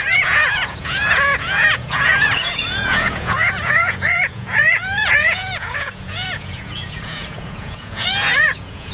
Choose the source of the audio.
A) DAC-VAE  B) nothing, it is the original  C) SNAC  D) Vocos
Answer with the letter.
D